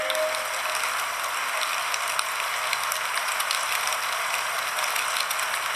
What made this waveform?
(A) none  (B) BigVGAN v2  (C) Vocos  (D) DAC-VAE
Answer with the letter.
A